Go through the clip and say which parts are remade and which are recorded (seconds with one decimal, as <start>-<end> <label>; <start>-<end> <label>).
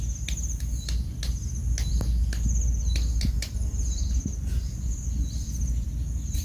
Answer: 0.0-6.4 recorded